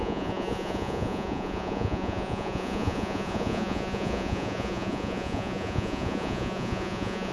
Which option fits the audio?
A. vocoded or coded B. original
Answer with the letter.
A